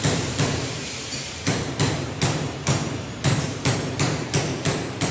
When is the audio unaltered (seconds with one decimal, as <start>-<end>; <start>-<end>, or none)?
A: none